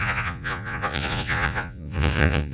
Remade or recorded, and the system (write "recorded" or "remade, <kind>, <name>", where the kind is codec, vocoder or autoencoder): remade, vocoder, Vocos